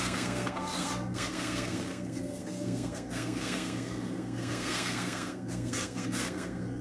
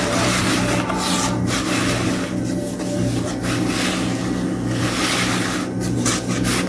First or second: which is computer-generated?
first